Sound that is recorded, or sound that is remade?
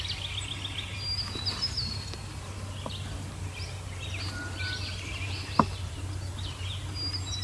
recorded